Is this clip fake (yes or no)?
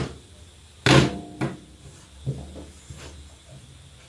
no